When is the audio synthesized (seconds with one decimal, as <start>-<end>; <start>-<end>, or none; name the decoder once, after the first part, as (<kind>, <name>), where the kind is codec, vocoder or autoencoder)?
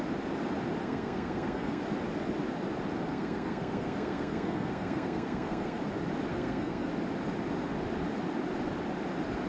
0.8-1.8 (codec, SNAC); 3.1-5.8; 6.3-6.9